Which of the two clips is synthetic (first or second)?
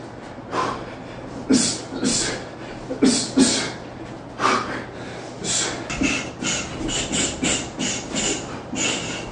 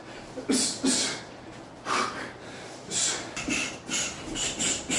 second